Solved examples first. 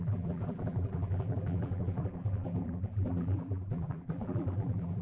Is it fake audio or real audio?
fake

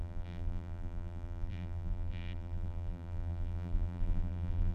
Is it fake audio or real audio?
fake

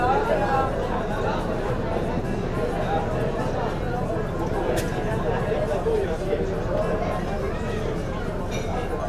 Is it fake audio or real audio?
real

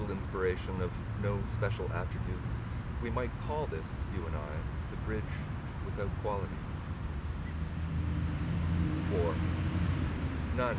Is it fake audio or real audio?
real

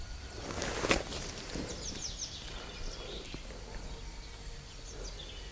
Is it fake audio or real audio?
real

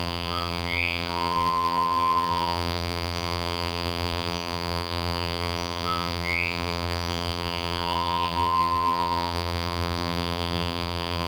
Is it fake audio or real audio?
fake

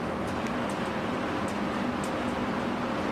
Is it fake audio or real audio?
real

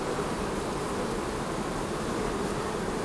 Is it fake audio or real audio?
fake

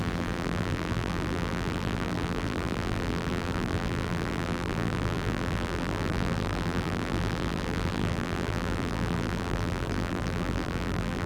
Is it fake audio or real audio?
fake